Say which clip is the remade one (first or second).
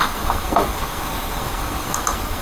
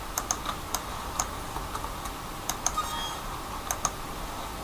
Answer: first